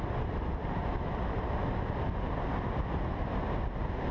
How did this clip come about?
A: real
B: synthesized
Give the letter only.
A